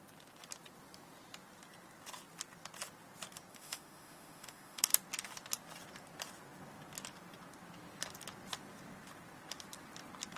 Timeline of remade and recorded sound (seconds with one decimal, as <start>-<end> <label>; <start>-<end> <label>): 0.0-3.5 recorded; 3.5-4.9 remade; 4.9-10.4 recorded